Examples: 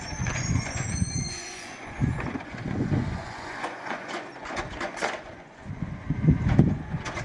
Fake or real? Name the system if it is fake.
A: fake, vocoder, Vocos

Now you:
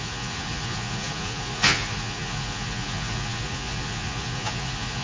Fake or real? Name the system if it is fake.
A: fake, vocoder, Vocos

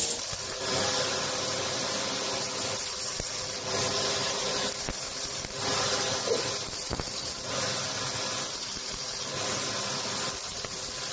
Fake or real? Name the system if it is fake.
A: real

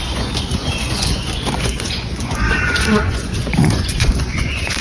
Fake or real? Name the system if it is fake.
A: fake, vocoder, Vocos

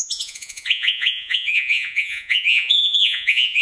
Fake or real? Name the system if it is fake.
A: fake, vocoder, Vocos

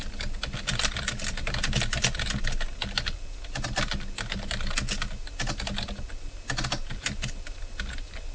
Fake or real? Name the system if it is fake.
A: real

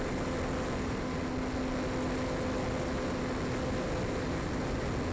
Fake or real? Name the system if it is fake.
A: real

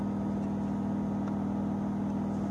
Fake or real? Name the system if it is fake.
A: real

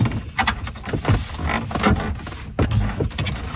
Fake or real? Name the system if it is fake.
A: real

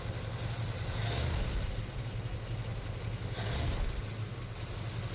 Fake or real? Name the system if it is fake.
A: real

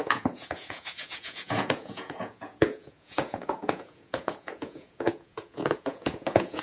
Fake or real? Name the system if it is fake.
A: fake, vocoder, Vocos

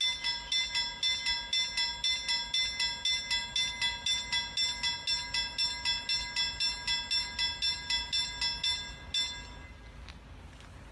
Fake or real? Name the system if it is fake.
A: real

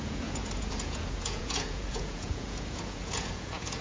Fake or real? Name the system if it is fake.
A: fake, vocoder, Vocos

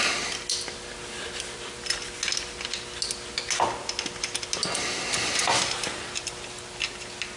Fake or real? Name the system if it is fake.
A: real